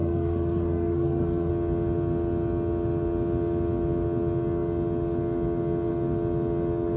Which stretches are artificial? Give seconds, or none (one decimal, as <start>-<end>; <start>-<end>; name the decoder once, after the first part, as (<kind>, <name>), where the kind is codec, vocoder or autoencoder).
0.0-1.5 (codec, SNAC)